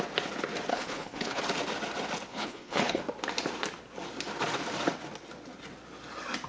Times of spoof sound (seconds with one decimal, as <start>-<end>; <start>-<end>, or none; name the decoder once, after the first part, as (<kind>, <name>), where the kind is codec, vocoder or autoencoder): 0.7-1.4 (codec, HILCodec); 2.3-3.0